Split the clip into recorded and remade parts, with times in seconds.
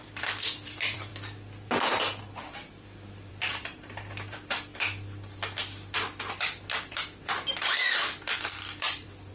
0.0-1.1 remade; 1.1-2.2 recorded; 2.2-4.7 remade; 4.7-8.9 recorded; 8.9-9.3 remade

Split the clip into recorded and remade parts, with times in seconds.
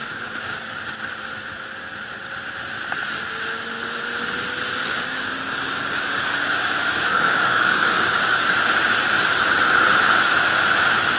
0.0-0.8 remade; 0.8-4.9 recorded; 4.9-8.6 remade; 8.6-11.2 recorded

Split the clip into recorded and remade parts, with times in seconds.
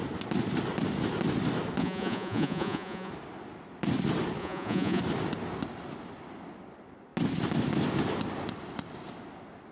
0.0-1.8 recorded; 1.8-3.1 remade; 3.1-4.4 recorded; 4.4-5.0 remade; 5.0-9.7 recorded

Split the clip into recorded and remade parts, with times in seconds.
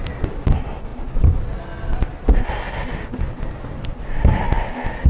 0.0-5.1 recorded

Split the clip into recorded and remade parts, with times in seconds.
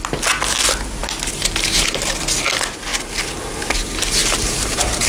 0.0-4.2 recorded; 4.2-5.1 remade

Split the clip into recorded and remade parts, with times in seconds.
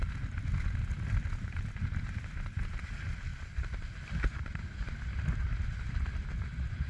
0.0-6.9 recorded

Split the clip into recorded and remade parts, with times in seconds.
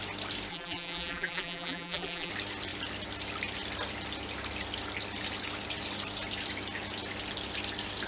0.0-0.5 recorded; 0.5-2.3 remade; 2.3-8.1 recorded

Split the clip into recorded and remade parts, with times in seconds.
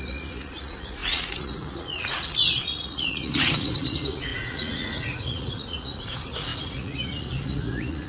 0.0-8.1 remade